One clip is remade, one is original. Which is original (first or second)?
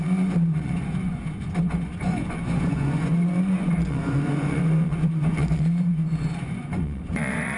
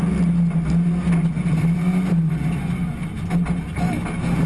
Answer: second